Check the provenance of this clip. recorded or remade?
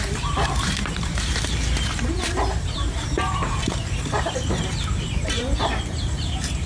remade